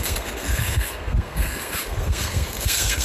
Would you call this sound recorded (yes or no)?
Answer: no